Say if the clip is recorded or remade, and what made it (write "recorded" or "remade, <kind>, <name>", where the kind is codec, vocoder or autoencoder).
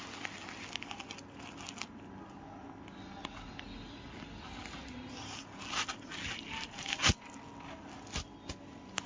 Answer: recorded